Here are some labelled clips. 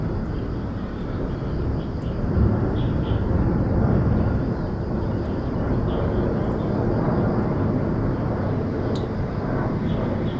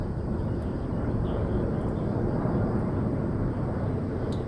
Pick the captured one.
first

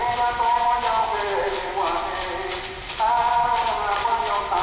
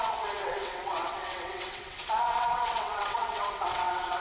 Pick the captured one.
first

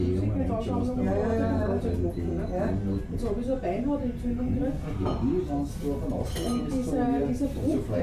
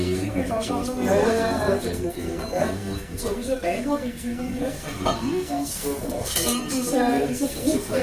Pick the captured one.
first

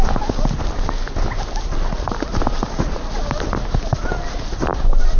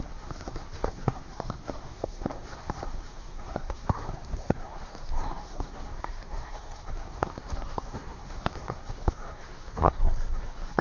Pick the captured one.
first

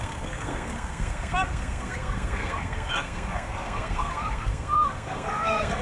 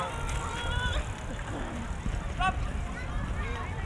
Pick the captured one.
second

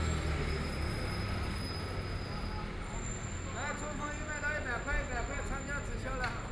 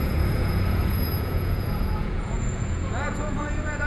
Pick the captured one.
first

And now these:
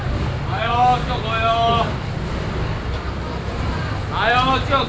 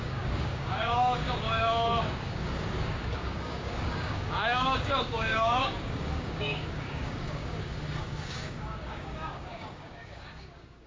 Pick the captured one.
first